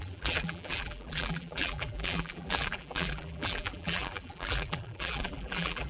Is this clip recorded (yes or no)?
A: no